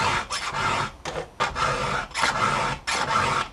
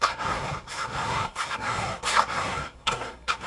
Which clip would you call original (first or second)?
first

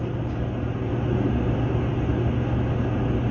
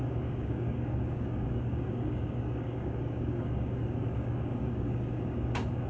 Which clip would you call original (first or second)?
first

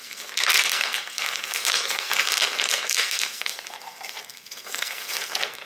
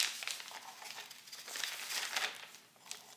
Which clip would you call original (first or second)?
second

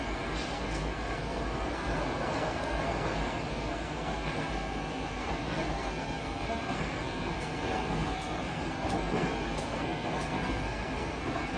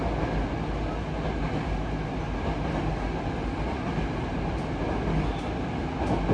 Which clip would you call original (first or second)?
second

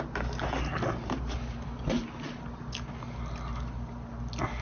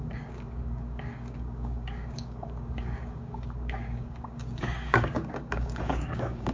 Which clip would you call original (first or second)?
first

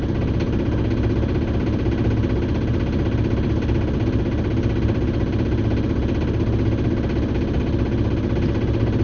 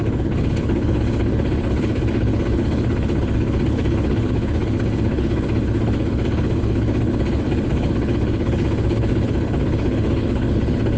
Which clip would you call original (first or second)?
first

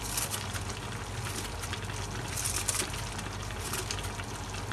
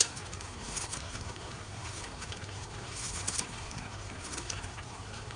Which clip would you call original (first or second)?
first